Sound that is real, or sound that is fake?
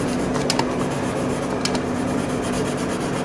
real